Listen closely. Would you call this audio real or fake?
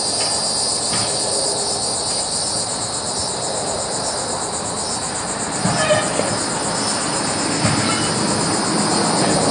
real